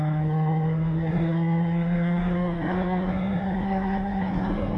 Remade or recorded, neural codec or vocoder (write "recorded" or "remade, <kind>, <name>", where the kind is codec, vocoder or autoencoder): remade, codec, SNAC